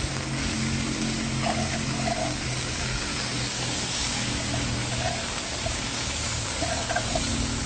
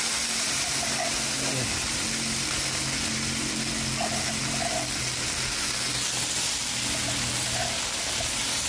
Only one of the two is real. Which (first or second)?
second